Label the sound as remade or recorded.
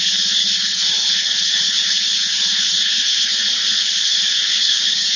remade